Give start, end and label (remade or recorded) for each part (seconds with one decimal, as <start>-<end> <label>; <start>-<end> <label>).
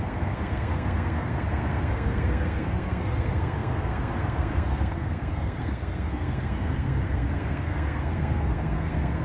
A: 0.0-9.2 remade